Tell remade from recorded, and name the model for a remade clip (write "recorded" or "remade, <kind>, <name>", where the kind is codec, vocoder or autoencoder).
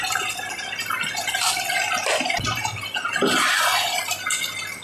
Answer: recorded